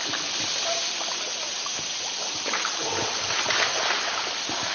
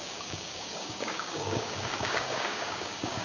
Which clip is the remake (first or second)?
second